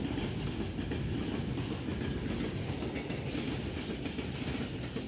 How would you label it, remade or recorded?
recorded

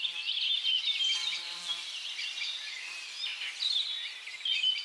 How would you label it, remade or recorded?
recorded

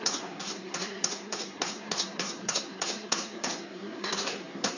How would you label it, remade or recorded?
remade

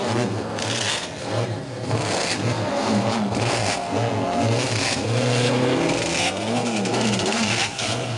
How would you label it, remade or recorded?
remade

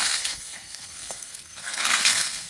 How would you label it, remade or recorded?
remade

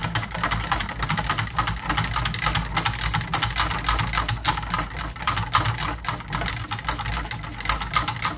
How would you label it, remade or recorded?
recorded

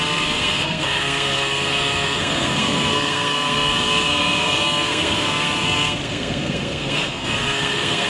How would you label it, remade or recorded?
remade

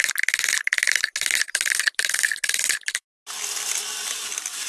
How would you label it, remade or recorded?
recorded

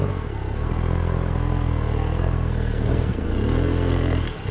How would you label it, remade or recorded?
remade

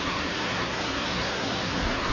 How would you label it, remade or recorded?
remade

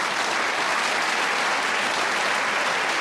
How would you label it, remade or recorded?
recorded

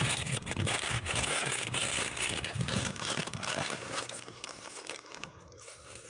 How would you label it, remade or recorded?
remade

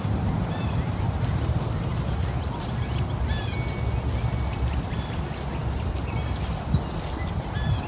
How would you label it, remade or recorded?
recorded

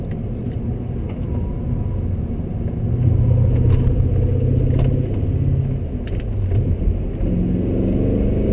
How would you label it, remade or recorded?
recorded